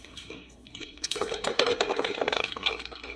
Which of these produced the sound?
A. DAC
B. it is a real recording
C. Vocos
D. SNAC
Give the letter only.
D